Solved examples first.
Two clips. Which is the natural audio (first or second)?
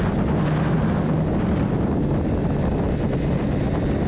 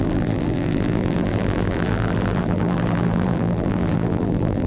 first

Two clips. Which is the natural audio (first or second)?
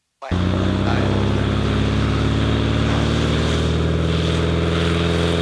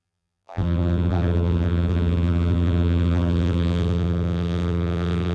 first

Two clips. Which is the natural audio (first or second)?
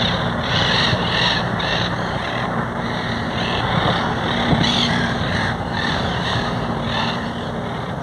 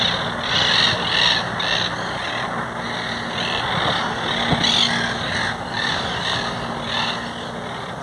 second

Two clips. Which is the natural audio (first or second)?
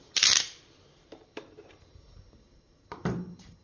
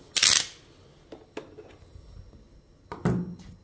second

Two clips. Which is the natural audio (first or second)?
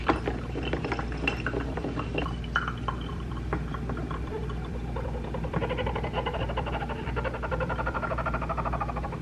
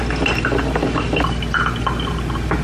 second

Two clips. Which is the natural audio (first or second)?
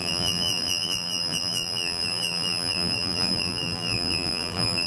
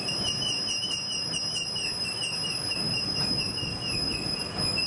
second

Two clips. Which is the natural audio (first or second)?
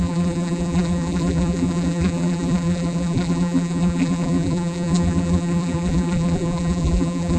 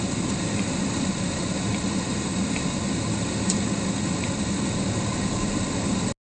second